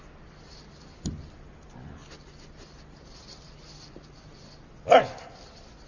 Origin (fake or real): real